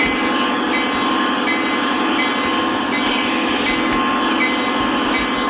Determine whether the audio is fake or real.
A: real